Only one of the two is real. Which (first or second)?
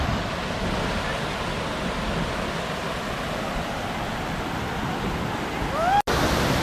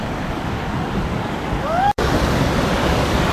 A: first